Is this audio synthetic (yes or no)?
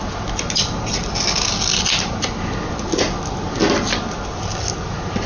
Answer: no